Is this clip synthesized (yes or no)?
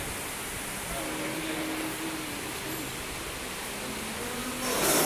no